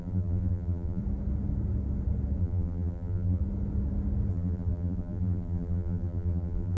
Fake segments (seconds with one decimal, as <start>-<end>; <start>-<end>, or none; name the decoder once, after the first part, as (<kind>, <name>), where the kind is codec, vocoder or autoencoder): 0.0-1.0 (vocoder, BigVGAN v2); 2.4-3.4; 4.3-6.8